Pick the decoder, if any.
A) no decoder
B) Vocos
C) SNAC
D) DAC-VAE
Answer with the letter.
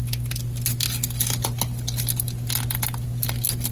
A